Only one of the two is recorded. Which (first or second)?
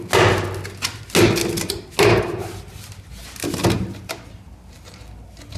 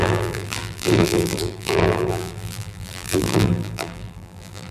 first